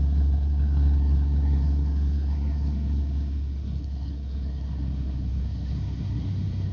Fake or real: fake